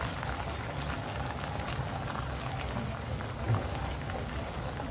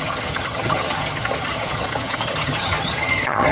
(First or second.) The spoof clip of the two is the second